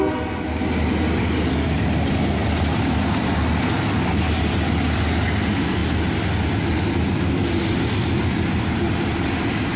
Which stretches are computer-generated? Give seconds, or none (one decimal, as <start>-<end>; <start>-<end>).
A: none